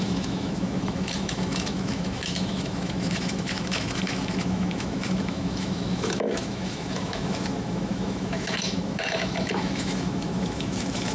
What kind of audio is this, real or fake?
fake